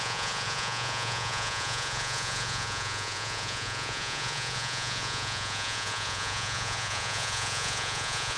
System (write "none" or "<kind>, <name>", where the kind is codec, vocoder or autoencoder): vocoder, Vocos